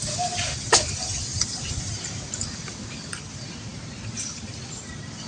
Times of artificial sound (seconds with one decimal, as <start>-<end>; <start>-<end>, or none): 1.3-2.7; 3.7-4.6